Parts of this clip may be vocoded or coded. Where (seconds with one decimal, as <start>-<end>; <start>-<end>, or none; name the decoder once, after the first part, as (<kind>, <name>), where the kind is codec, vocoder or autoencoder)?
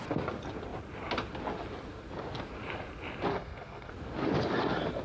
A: 3.3-3.9 (codec, SNAC)